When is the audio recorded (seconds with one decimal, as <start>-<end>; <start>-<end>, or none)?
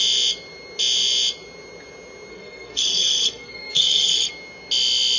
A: 0.0-2.3; 4.3-5.2